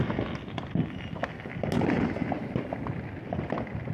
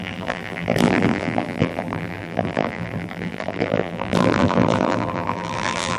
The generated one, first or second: second